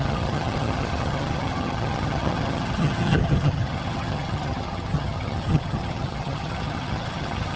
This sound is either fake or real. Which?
fake